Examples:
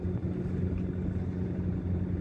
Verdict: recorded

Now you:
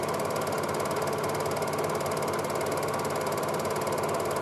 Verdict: recorded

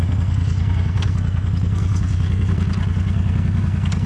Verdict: remade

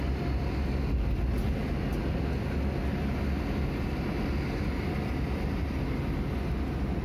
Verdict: recorded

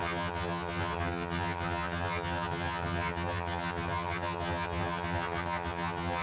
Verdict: remade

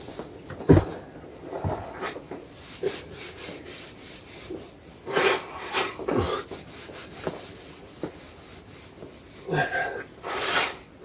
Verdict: recorded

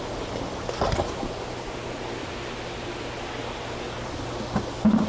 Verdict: recorded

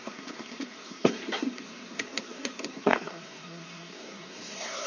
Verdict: remade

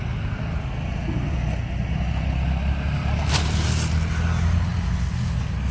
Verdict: recorded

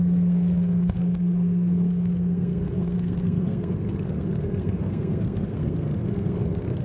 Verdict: remade